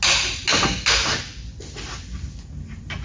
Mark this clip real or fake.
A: real